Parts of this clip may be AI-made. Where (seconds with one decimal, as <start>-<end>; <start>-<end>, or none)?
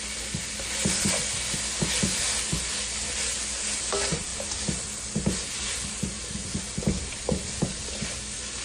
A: none